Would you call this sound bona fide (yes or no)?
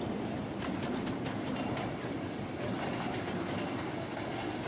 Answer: yes